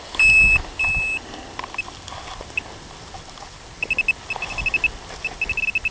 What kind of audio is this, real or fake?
real